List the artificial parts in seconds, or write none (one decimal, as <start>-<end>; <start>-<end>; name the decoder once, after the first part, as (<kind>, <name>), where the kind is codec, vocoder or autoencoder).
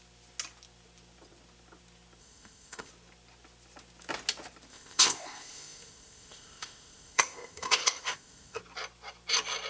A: 2.2-2.9 (codec, ZipCodec); 4.7-8.6